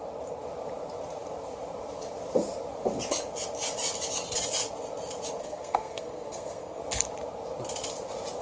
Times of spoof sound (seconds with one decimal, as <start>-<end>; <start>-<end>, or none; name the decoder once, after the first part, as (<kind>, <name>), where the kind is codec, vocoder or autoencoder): 5.4-6.8 (codec, SNAC)